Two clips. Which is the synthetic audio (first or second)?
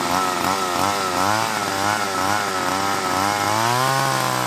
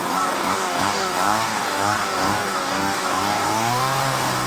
second